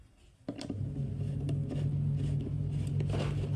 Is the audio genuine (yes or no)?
yes